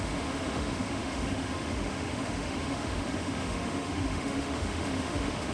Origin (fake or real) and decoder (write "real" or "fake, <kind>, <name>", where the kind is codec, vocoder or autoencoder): fake, autoencoder, DAC-VAE